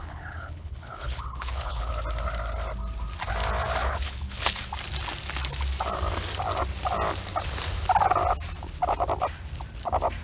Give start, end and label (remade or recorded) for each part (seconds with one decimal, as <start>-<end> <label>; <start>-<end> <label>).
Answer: 0.0-1.9 remade; 1.9-3.8 recorded; 3.8-4.6 remade; 4.6-10.2 recorded